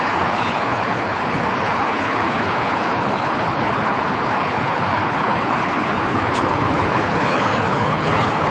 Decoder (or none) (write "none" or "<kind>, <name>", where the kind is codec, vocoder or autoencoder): codec, HILCodec